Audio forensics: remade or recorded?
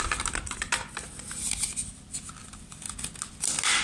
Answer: recorded